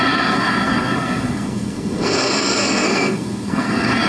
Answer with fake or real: fake